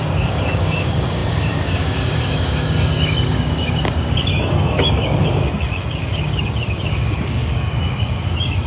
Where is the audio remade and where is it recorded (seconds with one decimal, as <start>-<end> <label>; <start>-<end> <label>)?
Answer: 0.0-8.7 remade